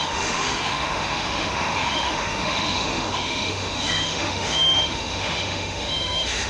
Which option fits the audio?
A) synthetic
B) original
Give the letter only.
A